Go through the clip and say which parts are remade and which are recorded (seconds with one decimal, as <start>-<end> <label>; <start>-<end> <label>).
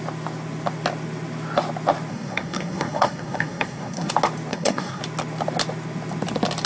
0.0-2.1 recorded; 2.1-4.1 remade; 4.1-4.5 recorded; 4.5-5.0 remade; 5.0-6.7 recorded